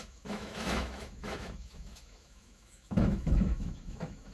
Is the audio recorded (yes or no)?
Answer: no